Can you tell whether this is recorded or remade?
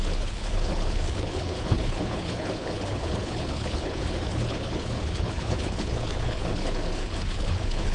remade